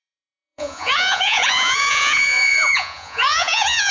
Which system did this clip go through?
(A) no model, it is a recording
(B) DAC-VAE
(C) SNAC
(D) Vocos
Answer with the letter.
D